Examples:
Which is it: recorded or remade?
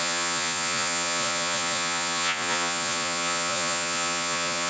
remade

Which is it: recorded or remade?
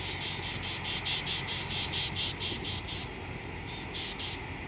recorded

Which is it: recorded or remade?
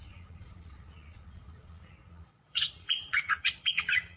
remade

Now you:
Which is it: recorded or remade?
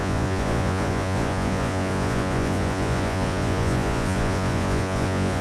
remade